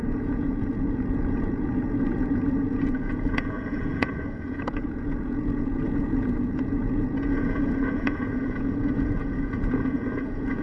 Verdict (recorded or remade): remade